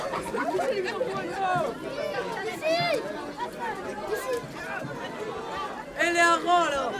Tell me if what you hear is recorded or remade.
recorded